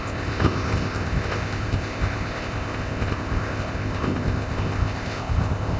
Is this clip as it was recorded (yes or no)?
no